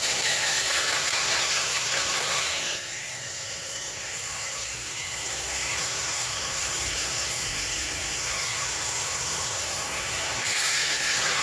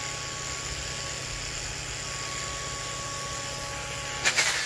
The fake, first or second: first